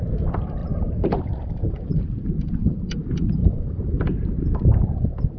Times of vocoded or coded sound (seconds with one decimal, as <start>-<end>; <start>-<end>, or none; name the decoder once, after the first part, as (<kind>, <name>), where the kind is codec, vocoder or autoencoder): 0.6-2.8 (vocoder, BigVGAN v2); 3.4-5.4